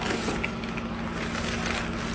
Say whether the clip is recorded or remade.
recorded